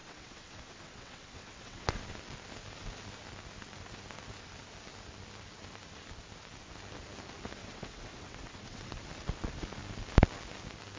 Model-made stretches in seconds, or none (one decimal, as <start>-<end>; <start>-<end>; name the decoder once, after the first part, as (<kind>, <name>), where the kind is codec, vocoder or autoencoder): 0.0-2.0 (vocoder, WaveNeXt); 7.6-8.9